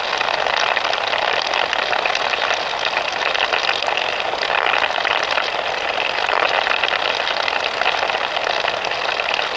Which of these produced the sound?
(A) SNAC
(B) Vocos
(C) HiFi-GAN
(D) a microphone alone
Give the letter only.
D